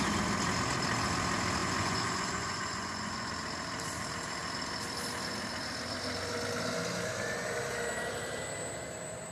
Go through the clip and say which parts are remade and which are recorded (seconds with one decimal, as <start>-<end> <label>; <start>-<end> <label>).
0.0-1.6 recorded; 1.6-3.3 remade; 3.3-9.3 recorded